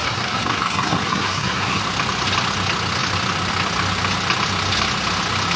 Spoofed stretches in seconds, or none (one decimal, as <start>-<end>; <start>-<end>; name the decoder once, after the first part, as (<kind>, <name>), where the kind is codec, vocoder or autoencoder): 0.0-1.8 (codec, SNAC)